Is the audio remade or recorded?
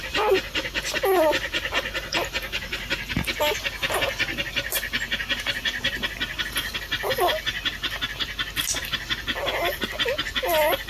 recorded